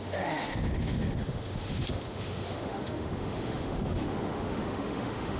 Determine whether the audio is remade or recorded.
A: remade